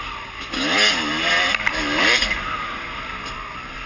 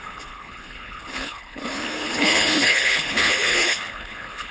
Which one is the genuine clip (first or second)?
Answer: first